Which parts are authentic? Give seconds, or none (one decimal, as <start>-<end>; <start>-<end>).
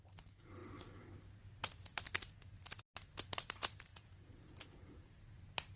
0.0-3.9; 5.2-5.8